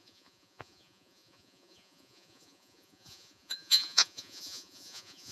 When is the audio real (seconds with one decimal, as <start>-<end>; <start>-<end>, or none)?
none